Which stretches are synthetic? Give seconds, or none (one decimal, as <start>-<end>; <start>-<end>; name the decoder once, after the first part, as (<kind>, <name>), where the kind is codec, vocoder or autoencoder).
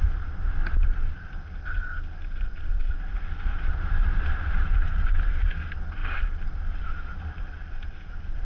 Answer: 3.5-4.6 (vocoder, BigVGAN v2)